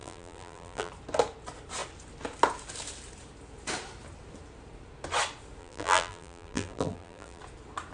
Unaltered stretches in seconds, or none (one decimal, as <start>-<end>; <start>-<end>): 0.9-5.6; 7.4-7.9